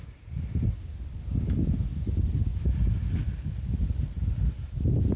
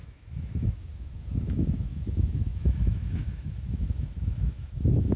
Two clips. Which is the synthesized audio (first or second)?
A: second